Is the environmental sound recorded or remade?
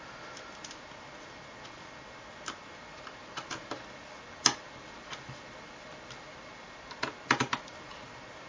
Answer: recorded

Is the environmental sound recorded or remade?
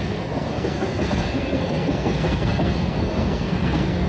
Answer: remade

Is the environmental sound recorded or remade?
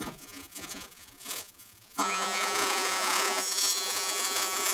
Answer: remade